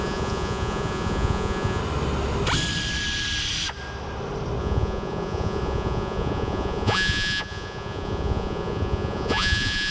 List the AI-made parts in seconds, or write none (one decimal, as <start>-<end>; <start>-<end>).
0.0-1.8; 4.6-9.9